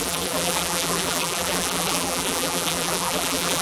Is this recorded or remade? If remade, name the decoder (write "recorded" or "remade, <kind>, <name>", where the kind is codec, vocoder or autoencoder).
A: remade, vocoder, BigVGAN v2